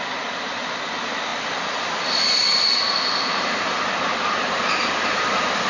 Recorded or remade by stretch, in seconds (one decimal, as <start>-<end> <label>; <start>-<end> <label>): 0.0-5.7 recorded